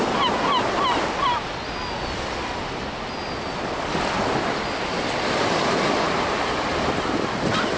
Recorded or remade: recorded